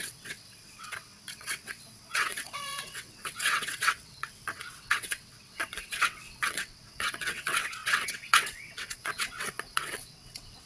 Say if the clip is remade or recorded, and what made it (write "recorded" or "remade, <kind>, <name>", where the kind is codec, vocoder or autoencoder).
remade, vocoder, WaveNeXt